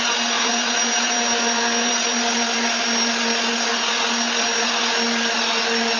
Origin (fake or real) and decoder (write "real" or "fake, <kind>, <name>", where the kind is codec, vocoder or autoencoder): real